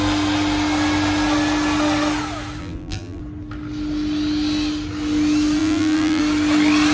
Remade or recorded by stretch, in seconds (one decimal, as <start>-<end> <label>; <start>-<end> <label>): 0.0-2.6 recorded; 2.6-3.2 remade; 3.2-5.6 recorded; 5.6-6.2 remade; 6.2-6.9 recorded